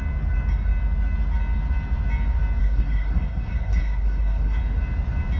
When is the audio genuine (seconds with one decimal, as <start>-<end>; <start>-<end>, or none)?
0.0-2.6; 4.6-5.4